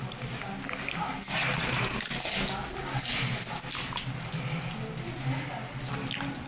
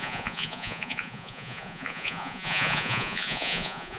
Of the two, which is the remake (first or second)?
second